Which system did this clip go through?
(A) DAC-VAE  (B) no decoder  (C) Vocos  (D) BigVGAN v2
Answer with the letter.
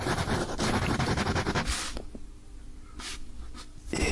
B